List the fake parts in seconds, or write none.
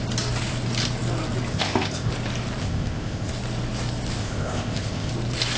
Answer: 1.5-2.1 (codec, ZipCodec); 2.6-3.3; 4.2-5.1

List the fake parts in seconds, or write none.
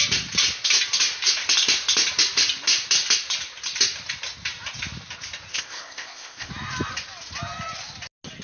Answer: 5.5-6.5 (codec, ZipCodec)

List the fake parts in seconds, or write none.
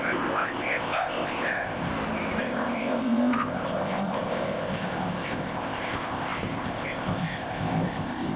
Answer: 0.0-1.9 (codec, ZipCodec); 2.4-8.4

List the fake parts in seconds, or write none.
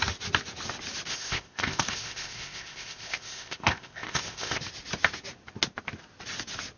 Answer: 1.1-4.6 (codec, ZipCodec)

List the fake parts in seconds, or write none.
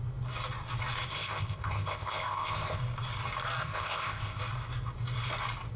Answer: 1.1-2.8 (codec, ZipCodec); 3.6-4.4